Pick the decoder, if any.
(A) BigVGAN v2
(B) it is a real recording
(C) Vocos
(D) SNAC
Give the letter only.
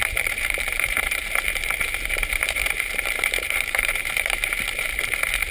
A